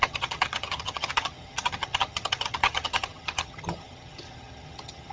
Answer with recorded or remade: remade